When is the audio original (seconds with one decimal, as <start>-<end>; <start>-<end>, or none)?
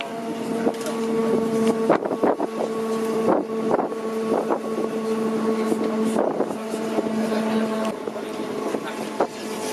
0.0-9.7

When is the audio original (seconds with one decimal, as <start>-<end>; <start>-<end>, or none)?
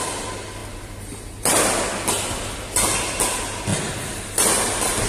0.0-0.6; 1.4-3.7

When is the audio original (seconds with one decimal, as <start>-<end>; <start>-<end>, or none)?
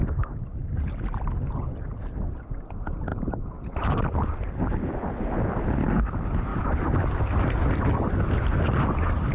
0.0-3.1; 4.1-6.5; 7.0-9.3